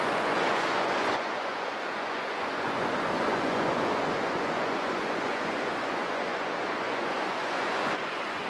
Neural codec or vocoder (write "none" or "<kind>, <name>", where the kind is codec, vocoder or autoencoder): vocoder, Vocos